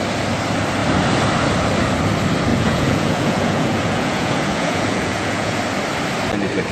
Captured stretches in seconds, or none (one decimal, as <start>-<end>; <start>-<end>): 0.0-2.5; 5.6-6.7